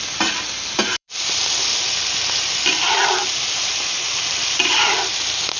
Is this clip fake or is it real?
fake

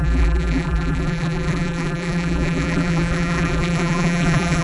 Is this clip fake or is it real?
fake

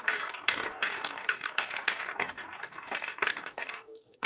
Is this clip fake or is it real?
fake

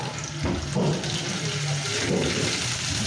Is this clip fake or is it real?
real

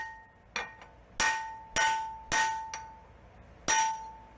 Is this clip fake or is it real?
real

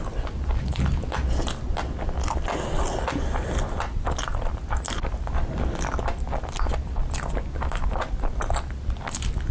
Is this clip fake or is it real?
real